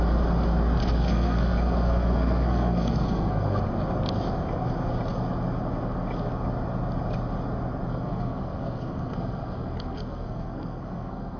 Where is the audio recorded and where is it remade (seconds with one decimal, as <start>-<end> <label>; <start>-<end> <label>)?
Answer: 0.0-0.8 recorded; 0.8-3.6 remade; 3.6-7.9 recorded; 7.9-11.4 remade